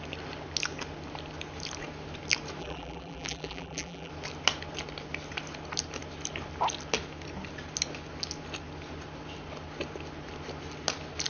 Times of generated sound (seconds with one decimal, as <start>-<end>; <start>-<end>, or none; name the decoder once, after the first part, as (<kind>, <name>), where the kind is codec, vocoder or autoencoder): 2.6-4.1 (vocoder, BigVGAN v2)